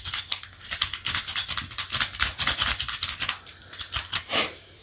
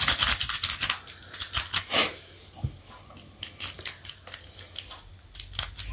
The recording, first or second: second